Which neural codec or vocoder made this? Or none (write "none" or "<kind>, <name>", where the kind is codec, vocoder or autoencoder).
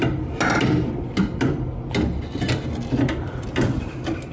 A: none